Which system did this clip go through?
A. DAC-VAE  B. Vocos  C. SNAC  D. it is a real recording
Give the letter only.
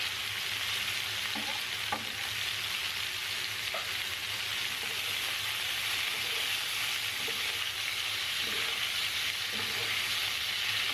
D